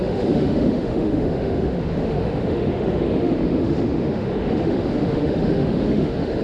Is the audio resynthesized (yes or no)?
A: yes